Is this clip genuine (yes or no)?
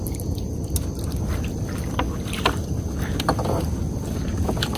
yes